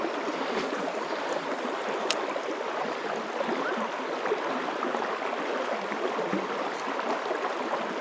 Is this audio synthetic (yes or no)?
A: no